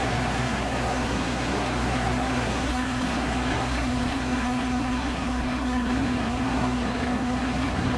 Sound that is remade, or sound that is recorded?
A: remade